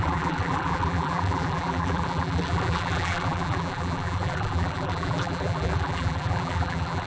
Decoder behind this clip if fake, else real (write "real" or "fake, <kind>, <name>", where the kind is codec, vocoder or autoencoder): fake, vocoder, BigVGAN v2